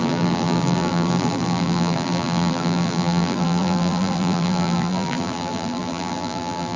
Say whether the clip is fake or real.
fake